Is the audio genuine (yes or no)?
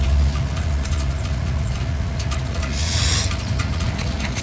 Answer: no